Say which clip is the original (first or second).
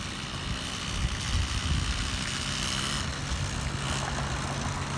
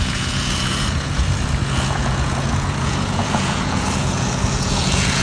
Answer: first